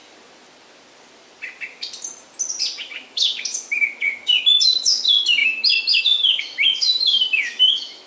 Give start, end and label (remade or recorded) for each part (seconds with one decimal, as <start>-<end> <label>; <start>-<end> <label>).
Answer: 0.0-2.8 recorded; 2.8-8.1 remade